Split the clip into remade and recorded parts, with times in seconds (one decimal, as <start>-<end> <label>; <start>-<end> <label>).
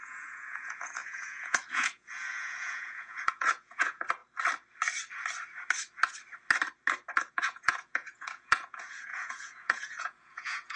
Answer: 0.0-4.2 remade; 4.2-7.3 recorded; 7.3-10.8 remade